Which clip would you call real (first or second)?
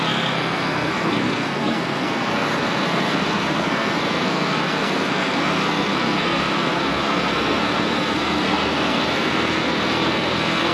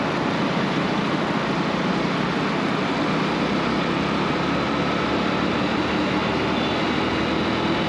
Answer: second